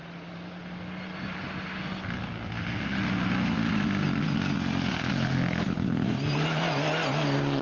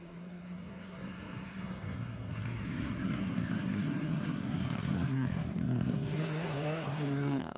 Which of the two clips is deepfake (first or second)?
second